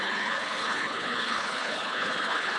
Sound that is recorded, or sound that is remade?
remade